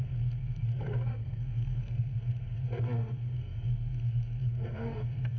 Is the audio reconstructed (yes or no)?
yes